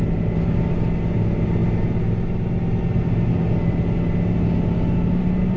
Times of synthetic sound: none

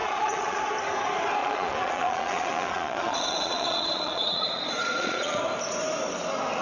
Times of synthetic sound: 0.0-0.6 (vocoder, Vocos); 1.4-5.4

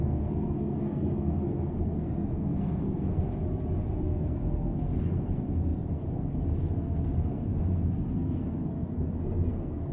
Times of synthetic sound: 0.0-3.3 (codec, SNAC); 3.9-9.9

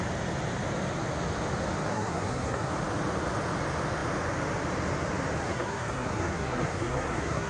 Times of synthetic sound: 1.9-2.7 (codec, SNAC); 5.4-7.5

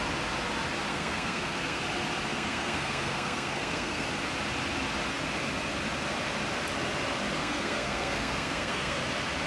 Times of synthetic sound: 0.9-1.8 (codec, SNAC); 2.3-4.1; 7.4-9.0

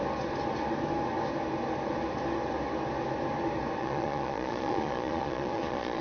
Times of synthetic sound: 3.8-6.0 (vocoder, Vocos)

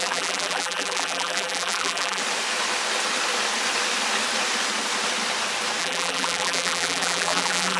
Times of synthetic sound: 0.0-2.2 (vocoder, BigVGAN v2); 5.8-7.8